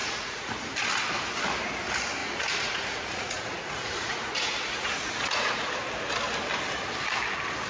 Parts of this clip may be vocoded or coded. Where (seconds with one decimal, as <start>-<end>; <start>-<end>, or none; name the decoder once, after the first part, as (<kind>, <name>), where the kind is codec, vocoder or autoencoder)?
0.0-0.5 (vocoder, Vocos); 2.2-5.7